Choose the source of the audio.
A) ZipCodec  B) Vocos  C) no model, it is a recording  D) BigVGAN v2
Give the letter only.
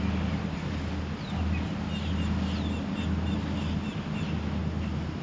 C